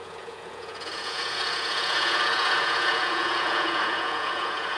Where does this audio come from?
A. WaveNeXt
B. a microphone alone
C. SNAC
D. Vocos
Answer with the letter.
D